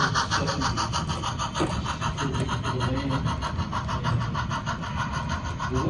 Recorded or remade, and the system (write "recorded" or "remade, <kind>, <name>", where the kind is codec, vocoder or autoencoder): recorded